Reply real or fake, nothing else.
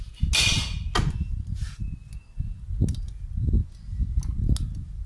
real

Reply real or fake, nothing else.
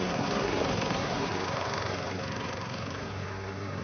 fake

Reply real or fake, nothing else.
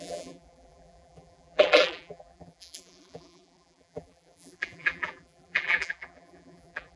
fake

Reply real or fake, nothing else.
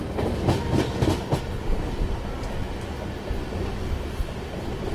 real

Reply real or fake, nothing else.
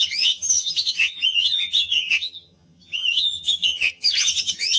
fake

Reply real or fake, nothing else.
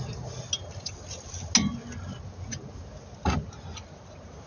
real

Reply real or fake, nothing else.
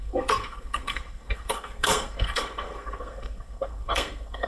fake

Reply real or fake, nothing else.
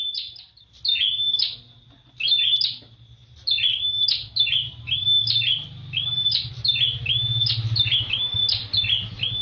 real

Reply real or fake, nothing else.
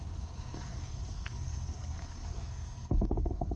fake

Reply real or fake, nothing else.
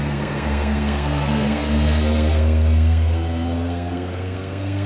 fake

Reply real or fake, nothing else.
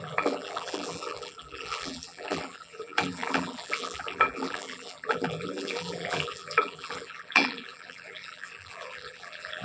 fake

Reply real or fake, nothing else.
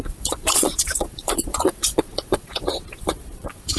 fake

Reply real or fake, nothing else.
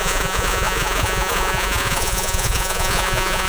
fake